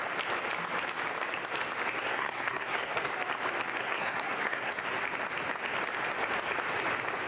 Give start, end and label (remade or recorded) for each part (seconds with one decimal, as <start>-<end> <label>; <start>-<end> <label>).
0.0-2.1 recorded; 2.1-3.1 remade; 3.1-3.8 recorded; 3.8-4.7 remade; 4.7-7.3 recorded

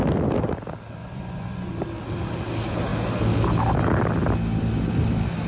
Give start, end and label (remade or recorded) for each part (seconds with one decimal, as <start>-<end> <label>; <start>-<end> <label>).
0.0-1.0 recorded; 1.0-1.7 remade; 1.7-5.5 recorded

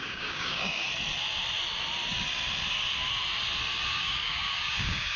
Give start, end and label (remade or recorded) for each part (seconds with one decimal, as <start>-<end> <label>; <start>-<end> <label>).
0.0-0.8 remade; 0.8-3.9 recorded; 3.9-5.2 remade

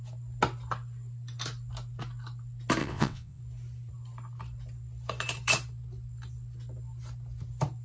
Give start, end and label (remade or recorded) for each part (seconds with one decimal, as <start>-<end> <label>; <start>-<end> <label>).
0.0-2.8 recorded; 2.8-3.4 remade; 3.4-7.8 recorded

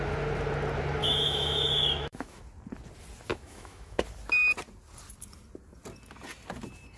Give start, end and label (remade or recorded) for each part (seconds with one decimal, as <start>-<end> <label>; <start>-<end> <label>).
0.0-1.0 recorded; 1.0-2.4 remade; 2.4-3.3 recorded; 3.3-4.0 remade; 4.0-7.0 recorded